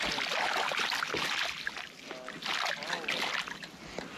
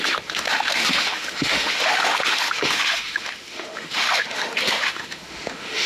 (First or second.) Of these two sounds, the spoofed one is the second